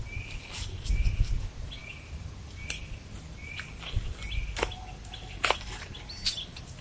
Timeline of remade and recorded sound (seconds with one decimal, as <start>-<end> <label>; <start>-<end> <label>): 0.0-6.8 recorded